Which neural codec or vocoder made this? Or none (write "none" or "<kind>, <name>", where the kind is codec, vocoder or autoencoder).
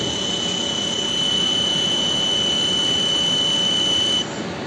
none